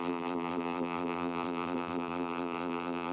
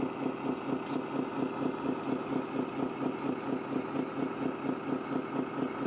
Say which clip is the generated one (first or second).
first